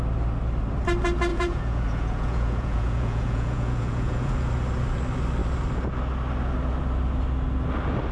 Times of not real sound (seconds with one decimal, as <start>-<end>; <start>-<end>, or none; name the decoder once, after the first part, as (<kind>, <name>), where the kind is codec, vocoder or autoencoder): 1.3-4.5 (vocoder, Vocos)